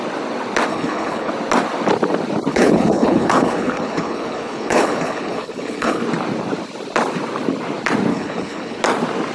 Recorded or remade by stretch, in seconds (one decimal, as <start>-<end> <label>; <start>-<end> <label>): 0.0-0.7 recorded; 0.7-1.3 remade; 1.3-2.5 recorded; 2.5-6.0 remade; 6.0-8.1 recorded; 8.1-8.8 remade; 8.8-9.3 recorded